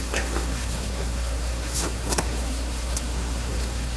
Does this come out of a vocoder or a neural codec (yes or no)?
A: yes